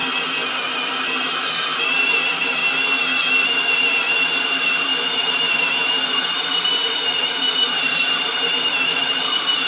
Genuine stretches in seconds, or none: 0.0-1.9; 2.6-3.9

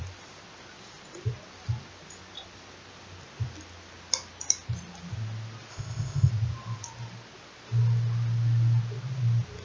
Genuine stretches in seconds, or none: 0.0-5.7; 6.3-9.6